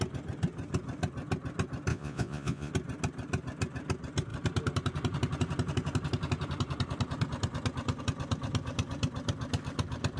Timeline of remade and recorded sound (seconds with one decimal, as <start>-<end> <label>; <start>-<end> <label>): 0.0-1.9 recorded; 1.9-2.7 remade; 2.7-10.2 recorded